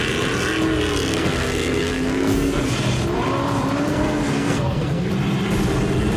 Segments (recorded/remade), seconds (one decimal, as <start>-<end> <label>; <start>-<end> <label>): 0.0-1.1 recorded; 1.1-2.7 remade; 2.7-3.9 recorded; 3.9-5.1 remade; 5.1-6.2 recorded

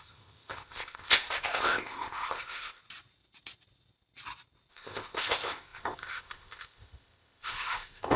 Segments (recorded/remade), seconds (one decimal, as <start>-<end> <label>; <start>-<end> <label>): 0.0-2.8 remade; 2.8-4.7 recorded; 4.7-8.2 remade

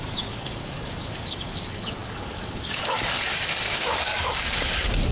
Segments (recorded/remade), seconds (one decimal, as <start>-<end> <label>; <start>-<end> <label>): 0.0-5.1 remade

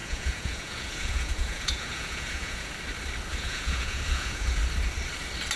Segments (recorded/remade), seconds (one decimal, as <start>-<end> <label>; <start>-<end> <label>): 0.0-2.7 remade; 2.7-3.3 recorded; 3.3-4.6 remade; 4.6-5.6 recorded